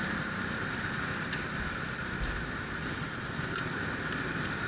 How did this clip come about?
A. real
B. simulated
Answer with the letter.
B